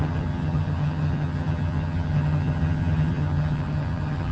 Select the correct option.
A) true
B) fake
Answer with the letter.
B